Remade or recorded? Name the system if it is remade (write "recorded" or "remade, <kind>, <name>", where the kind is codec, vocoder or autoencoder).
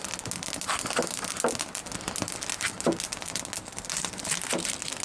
recorded